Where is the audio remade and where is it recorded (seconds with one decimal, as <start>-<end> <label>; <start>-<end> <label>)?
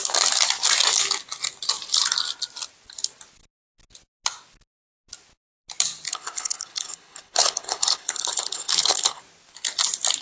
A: 0.0-6.1 recorded; 6.1-9.2 remade; 9.2-10.2 recorded